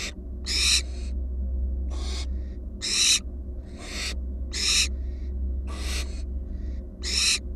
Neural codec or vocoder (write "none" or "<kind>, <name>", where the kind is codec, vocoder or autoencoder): none